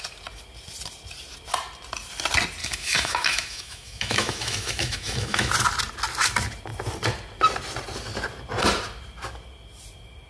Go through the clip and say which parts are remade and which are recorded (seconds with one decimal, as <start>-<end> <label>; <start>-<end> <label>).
0.0-2.6 recorded; 2.6-5.5 remade; 5.5-10.3 recorded